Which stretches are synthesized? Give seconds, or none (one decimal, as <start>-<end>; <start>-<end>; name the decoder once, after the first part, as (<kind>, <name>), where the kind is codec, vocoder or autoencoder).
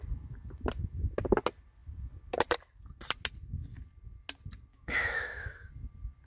4.7-5.7 (autoencoder, DAC-VAE)